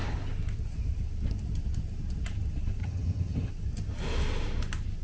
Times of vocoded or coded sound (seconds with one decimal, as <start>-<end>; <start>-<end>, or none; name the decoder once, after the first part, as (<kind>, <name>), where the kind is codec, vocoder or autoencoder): 2.8-3.5 (vocoder, HiFi-GAN)